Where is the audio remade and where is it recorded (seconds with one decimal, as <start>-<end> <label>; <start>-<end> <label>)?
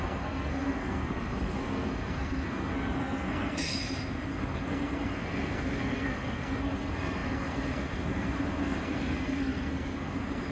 0.0-10.5 remade